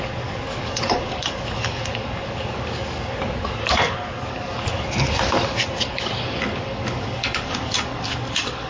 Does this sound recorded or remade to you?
remade